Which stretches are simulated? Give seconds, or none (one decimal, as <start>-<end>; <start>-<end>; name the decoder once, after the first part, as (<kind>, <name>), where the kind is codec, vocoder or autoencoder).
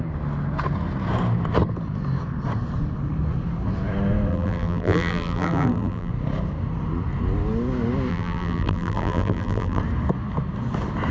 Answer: 4.3-6.1 (vocoder, BigVGAN v2); 8.1-9.8